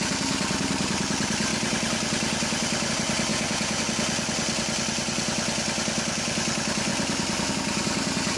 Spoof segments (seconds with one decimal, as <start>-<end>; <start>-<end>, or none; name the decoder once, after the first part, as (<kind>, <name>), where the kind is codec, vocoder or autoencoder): 3.3-3.8 (vocoder, Vocos)